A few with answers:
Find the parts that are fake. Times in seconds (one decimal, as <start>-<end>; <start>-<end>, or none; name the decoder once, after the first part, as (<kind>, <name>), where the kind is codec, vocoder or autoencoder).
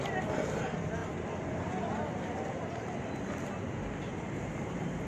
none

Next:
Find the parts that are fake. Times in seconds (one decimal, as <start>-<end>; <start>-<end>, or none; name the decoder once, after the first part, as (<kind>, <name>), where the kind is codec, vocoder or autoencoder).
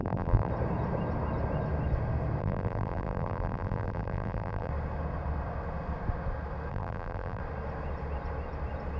0.0-0.5 (vocoder, BigVGAN v2); 2.4-4.7; 6.7-7.4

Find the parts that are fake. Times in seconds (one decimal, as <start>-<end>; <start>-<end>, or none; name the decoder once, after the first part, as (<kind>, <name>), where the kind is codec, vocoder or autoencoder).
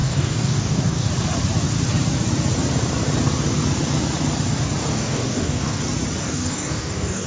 0.0-1.1 (codec, DAC); 4.9-5.8; 6.2-7.3